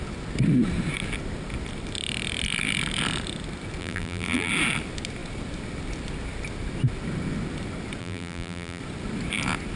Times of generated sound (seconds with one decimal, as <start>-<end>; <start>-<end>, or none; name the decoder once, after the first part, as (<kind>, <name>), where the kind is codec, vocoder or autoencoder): 3.8-4.5 (vocoder, BigVGAN v2); 8.0-8.8